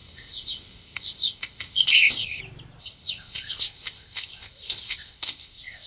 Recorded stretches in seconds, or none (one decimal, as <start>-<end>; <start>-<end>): 2.4-2.8